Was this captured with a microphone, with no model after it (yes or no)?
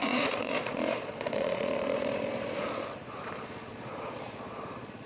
no